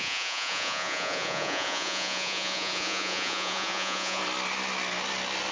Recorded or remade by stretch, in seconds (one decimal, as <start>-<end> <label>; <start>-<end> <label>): 0.0-4.2 remade; 4.2-5.5 recorded